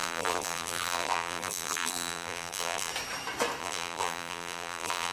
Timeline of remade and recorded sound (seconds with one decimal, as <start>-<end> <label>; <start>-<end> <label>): 0.0-2.9 remade; 2.9-3.6 recorded; 3.6-5.1 remade

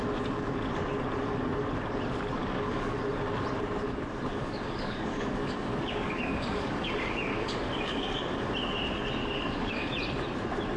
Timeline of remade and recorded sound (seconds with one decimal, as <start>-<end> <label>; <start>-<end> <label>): 0.0-2.4 recorded; 2.4-3.0 remade; 3.0-4.3 recorded; 4.3-8.5 remade; 8.5-9.2 recorded; 9.2-9.9 remade; 9.9-10.8 recorded

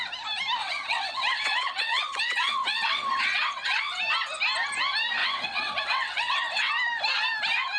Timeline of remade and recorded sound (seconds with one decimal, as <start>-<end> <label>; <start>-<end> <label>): 0.0-0.6 recorded; 0.6-4.0 remade; 4.0-5.2 recorded; 5.2-6.7 remade; 6.7-7.8 recorded

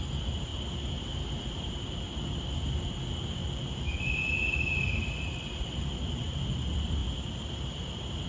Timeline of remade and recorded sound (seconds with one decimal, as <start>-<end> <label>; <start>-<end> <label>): 0.0-8.3 recorded

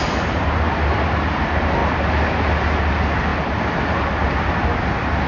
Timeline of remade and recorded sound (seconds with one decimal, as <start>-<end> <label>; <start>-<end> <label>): 0.0-3.3 recorded; 3.3-4.1 remade; 4.1-5.3 recorded

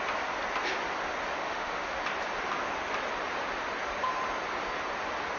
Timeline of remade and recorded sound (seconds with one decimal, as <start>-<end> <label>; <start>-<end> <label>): 0.0-1.4 recorded; 1.4-2.0 remade; 2.0-5.4 recorded